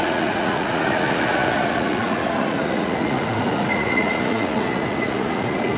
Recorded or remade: remade